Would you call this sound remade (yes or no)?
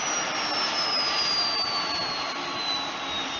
no